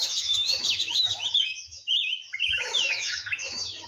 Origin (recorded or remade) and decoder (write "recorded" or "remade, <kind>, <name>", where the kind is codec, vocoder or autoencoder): remade, autoencoder, DAC-VAE